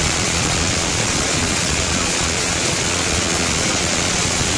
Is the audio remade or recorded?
remade